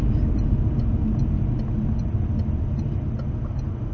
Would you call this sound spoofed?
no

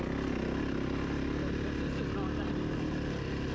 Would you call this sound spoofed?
no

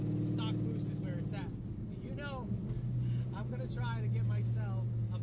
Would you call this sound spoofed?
no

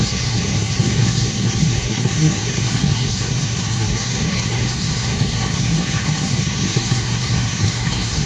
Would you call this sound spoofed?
yes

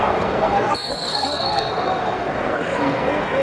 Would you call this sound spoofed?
yes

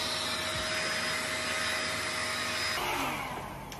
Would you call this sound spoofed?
no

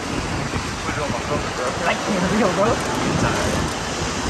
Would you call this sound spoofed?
no